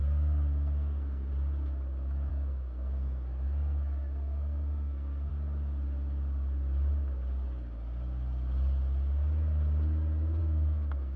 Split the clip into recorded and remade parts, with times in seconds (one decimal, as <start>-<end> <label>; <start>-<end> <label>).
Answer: 0.0-1.3 remade; 1.3-2.3 recorded; 2.3-5.3 remade; 5.3-10.4 recorded; 10.4-11.2 remade